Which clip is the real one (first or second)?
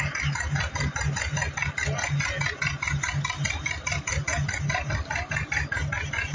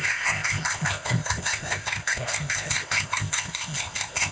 first